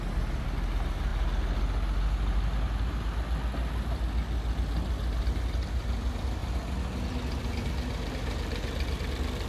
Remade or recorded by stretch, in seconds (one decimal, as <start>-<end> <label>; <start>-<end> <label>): 0.0-9.5 recorded